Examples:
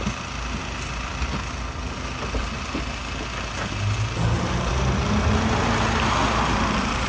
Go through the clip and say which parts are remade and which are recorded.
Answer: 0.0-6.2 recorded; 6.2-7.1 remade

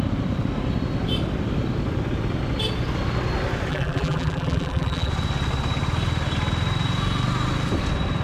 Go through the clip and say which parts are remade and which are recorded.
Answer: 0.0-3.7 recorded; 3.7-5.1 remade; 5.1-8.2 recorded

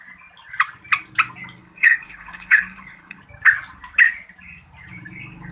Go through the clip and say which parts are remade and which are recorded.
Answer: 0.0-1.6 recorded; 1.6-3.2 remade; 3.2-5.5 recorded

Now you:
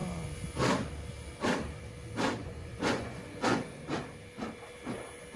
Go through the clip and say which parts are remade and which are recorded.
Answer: 0.0-2.4 recorded; 2.4-3.8 remade; 3.8-5.4 recorded

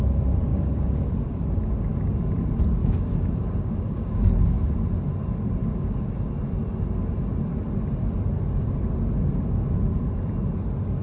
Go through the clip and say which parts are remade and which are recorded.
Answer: 0.0-0.5 recorded; 0.5-1.1 remade; 1.1-2.8 recorded; 2.8-4.8 remade; 4.8-5.6 recorded; 5.6-6.3 remade; 6.3-11.0 recorded